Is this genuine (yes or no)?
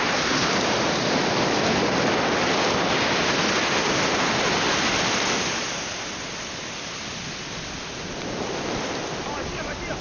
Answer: yes